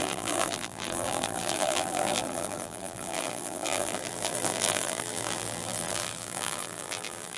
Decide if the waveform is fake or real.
fake